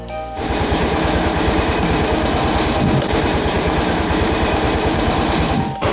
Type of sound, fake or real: fake